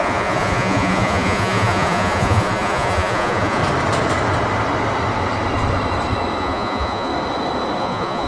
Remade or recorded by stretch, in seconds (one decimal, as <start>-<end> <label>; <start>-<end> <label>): 0.0-3.6 remade; 3.6-6.4 recorded; 6.4-7.1 remade; 7.1-7.8 recorded; 7.8-8.3 remade